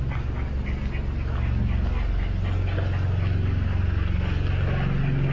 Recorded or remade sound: recorded